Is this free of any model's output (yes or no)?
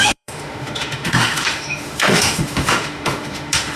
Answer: no